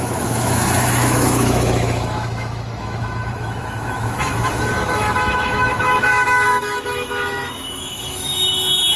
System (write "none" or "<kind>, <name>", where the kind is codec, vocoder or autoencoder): autoencoder, DAC-VAE